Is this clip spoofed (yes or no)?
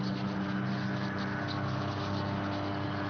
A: no